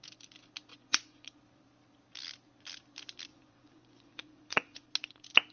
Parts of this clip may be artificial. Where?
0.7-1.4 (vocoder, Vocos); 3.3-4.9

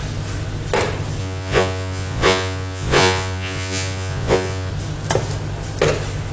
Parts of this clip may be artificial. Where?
1.2-4.7 (vocoder, Vocos)

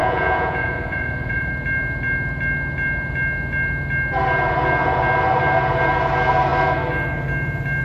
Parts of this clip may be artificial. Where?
0.0-1.5 (vocoder, Vocos)